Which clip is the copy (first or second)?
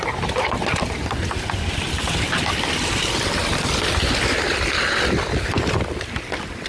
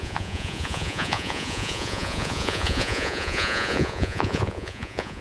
second